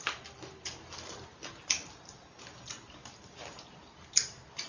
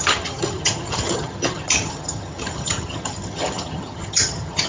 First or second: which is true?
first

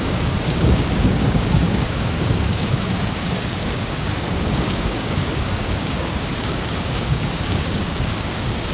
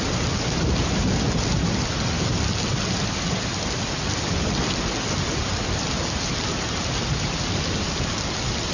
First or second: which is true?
second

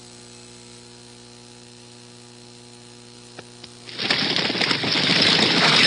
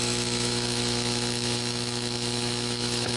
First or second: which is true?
first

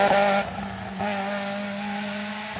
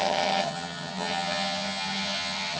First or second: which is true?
first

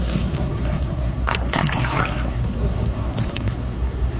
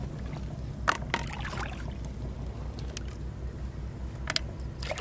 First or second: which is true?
second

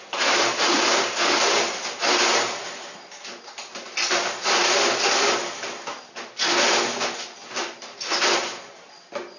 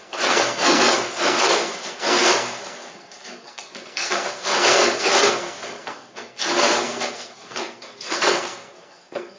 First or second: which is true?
first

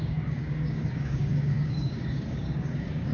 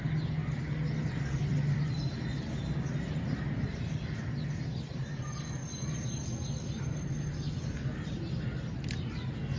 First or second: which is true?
second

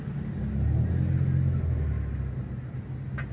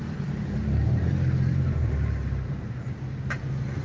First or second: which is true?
first